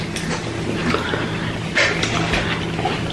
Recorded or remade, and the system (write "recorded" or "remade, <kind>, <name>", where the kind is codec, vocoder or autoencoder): recorded